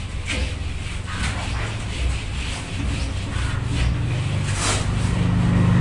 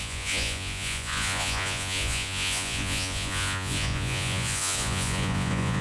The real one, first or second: first